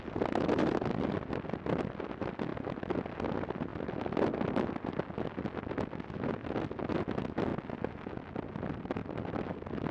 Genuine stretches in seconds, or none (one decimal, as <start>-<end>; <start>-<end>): 0.0-9.9